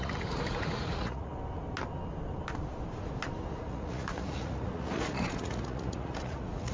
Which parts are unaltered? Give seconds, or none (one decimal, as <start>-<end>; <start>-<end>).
1.3-3.5